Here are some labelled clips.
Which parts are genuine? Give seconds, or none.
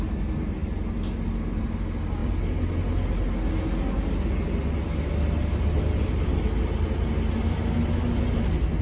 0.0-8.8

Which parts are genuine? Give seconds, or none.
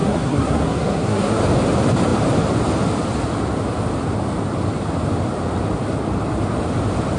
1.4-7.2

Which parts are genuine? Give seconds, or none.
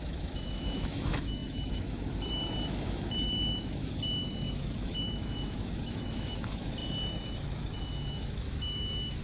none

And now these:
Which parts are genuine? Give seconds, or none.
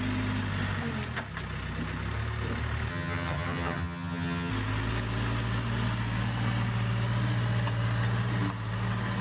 0.0-2.9; 4.5-9.2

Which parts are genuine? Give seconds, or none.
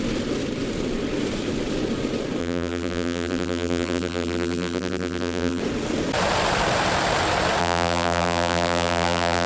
0.0-2.4; 5.6-7.6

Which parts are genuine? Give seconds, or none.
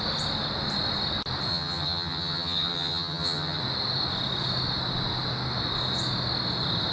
0.0-1.5; 3.6-6.9